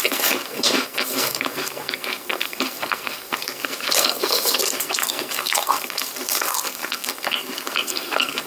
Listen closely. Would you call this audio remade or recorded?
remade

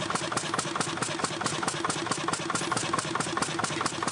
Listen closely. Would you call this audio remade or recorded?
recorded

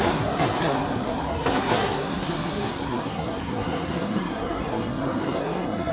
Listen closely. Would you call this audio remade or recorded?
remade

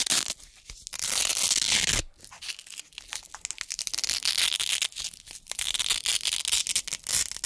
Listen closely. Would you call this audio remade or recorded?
recorded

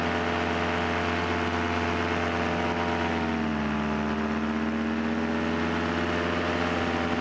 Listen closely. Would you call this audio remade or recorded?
recorded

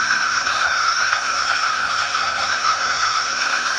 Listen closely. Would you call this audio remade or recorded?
remade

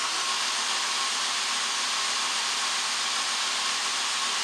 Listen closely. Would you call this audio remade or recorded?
recorded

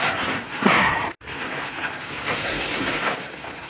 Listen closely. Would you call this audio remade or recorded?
remade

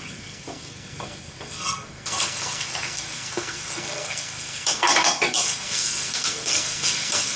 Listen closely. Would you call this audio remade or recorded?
remade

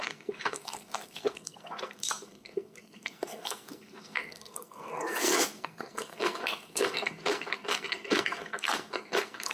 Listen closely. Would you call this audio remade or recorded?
remade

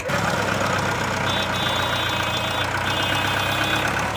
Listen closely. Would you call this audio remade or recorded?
recorded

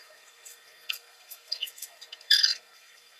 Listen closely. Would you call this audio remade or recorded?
remade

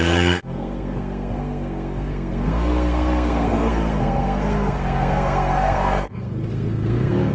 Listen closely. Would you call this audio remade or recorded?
remade